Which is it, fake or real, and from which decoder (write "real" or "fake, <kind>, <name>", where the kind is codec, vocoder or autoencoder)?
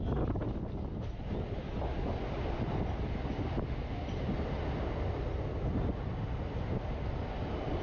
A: real